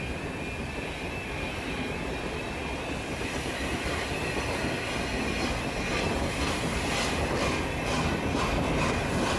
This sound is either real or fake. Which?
real